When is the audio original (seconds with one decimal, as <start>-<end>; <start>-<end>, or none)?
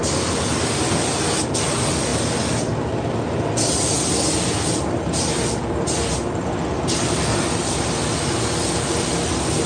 0.0-9.7